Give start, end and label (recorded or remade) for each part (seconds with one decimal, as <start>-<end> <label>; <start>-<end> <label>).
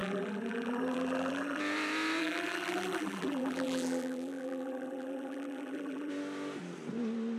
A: 0.0-1.6 remade; 1.6-2.2 recorded; 2.2-6.1 remade; 6.1-7.4 recorded